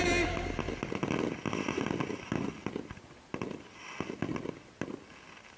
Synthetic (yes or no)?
no